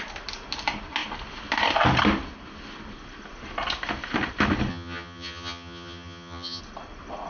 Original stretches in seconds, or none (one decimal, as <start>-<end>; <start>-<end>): 0.0-4.7; 6.6-7.3